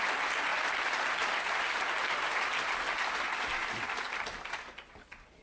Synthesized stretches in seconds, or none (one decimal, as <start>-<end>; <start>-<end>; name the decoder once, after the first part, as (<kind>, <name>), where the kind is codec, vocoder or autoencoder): none